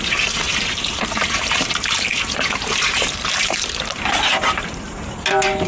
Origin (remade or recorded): remade